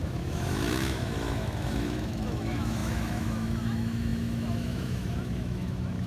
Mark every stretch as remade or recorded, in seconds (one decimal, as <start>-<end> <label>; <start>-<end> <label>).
0.0-6.1 remade